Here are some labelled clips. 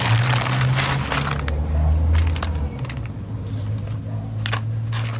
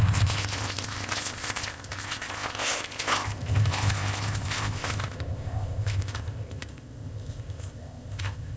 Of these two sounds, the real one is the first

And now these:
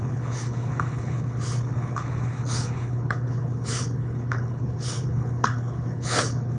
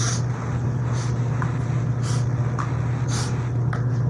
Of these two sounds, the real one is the second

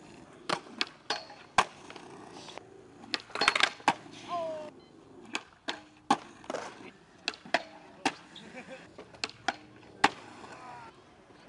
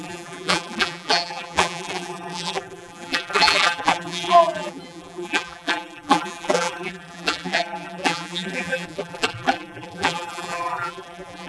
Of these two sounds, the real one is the first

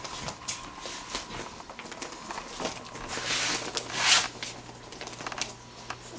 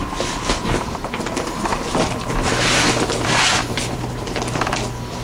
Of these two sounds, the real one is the first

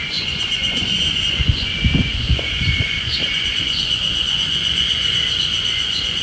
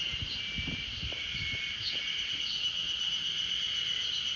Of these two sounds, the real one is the second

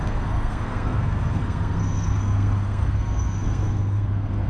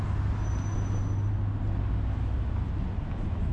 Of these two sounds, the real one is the second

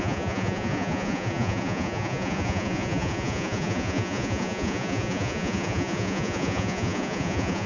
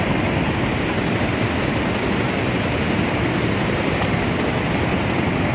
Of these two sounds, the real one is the second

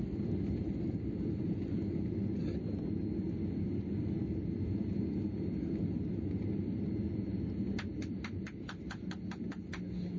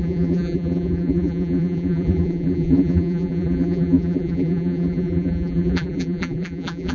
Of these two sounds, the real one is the first